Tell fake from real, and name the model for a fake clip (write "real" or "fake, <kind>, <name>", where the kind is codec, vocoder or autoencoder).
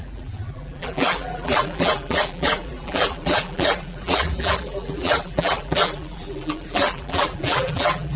fake, vocoder, BigVGAN v2